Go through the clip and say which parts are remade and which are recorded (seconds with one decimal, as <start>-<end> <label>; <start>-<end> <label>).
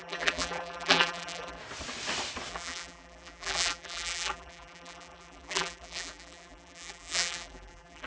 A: 0.0-1.6 remade; 1.6-2.5 recorded; 2.5-8.1 remade